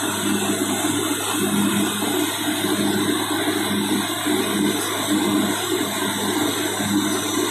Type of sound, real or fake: real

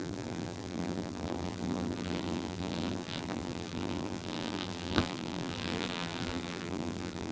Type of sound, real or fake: fake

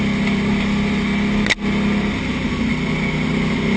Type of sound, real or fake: real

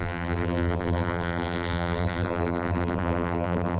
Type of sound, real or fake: fake